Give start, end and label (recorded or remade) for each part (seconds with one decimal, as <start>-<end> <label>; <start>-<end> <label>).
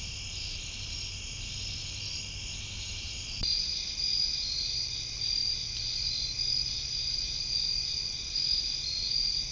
0.0-9.5 recorded